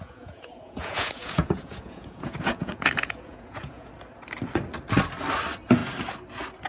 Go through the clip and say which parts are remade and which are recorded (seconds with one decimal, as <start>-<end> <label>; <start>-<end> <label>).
0.0-3.9 remade; 3.9-6.7 recorded